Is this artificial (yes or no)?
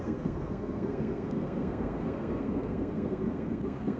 yes